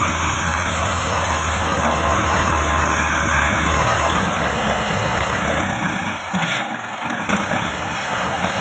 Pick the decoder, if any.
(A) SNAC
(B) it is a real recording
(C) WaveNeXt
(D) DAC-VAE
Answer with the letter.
A